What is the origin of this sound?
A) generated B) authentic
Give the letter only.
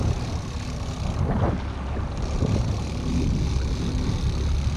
B